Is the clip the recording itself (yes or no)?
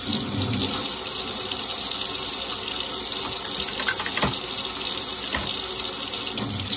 yes